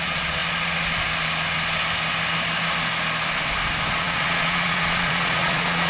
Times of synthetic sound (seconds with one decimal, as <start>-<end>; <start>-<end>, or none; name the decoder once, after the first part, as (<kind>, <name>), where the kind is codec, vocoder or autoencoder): 0.0-0.4 (vocoder, Vocos); 3.9-5.9